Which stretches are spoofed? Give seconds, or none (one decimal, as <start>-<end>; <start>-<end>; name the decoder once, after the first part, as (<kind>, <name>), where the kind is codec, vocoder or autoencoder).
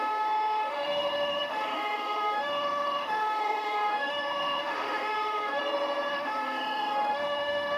0.0-5.6 (autoencoder, DAC-VAE); 6.1-7.8